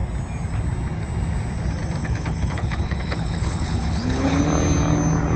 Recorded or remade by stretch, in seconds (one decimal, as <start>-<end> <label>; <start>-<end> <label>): 0.0-2.0 recorded; 2.0-4.4 remade; 4.4-5.4 recorded